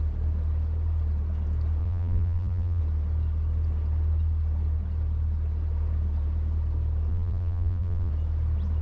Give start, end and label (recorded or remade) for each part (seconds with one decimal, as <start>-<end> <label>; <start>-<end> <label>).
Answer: 0.0-1.8 recorded; 1.8-2.8 remade; 2.8-7.1 recorded; 7.1-8.1 remade; 8.1-8.8 recorded